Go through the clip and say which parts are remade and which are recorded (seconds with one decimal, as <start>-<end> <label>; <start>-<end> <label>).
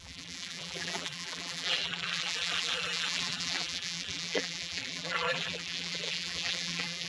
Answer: 0.0-7.1 remade